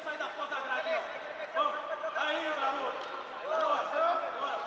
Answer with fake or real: real